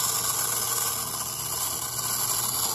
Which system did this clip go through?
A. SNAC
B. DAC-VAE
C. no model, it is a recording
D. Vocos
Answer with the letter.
C